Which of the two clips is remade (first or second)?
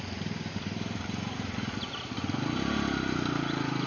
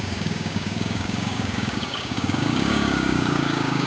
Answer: second